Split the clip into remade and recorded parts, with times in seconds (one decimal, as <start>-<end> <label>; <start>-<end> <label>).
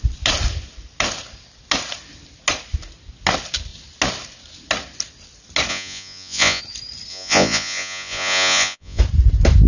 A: 0.0-5.7 recorded; 5.7-6.6 remade; 6.6-7.1 recorded; 7.1-9.0 remade; 9.0-9.7 recorded